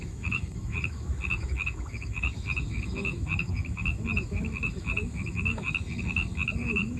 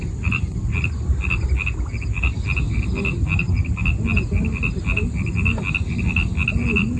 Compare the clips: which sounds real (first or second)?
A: second